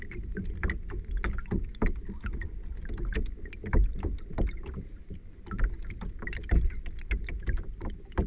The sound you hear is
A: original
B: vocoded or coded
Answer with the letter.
A